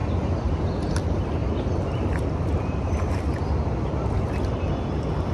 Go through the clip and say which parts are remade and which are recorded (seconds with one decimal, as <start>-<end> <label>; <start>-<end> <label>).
0.0-5.3 recorded